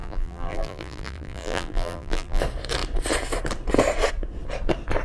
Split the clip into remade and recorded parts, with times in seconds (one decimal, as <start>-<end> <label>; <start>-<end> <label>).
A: 0.0-2.4 remade; 2.4-5.0 recorded